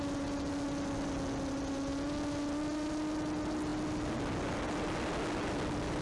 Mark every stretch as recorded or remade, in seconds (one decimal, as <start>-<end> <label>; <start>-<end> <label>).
0.0-6.0 recorded